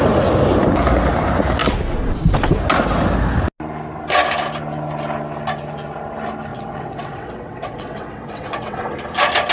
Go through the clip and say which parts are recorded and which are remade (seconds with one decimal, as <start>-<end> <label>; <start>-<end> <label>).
0.0-6.5 recorded; 6.5-8.9 remade; 8.9-9.5 recorded